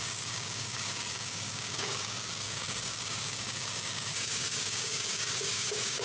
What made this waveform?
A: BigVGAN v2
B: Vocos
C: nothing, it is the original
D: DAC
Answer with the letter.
D